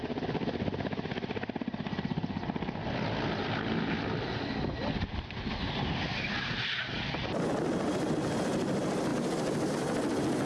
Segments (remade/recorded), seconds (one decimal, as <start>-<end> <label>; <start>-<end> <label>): 0.0-9.1 recorded; 9.1-9.7 remade; 9.7-10.5 recorded